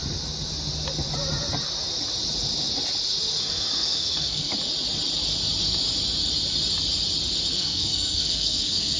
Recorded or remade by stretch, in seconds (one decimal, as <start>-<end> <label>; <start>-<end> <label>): 0.0-3.4 recorded; 3.4-4.5 remade; 4.5-7.5 recorded; 7.5-9.0 remade